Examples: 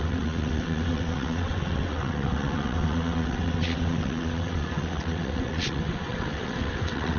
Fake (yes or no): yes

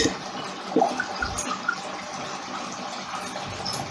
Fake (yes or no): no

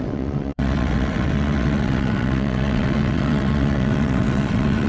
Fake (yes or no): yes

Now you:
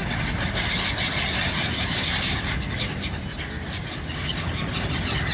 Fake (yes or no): no